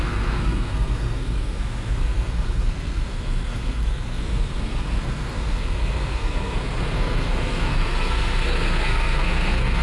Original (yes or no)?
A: no